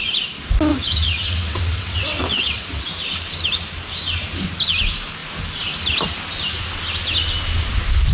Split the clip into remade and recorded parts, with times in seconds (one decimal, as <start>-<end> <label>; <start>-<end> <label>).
0.0-0.7 recorded; 0.7-2.8 remade; 2.8-8.1 recorded